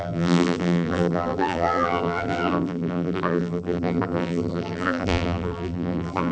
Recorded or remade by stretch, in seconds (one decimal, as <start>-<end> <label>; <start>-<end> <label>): 0.0-6.3 remade